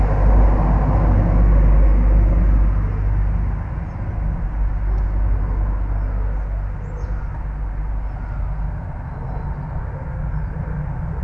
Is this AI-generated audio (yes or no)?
no